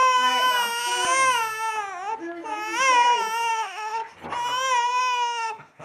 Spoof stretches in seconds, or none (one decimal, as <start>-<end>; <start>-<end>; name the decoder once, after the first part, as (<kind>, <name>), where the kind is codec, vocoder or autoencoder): 3.5-4.0 (autoencoder, DAC-VAE); 5.0-5.8